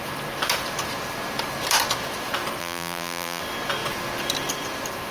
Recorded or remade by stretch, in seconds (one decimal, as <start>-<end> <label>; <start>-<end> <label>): 0.0-2.6 recorded; 2.6-3.4 remade; 3.4-5.1 recorded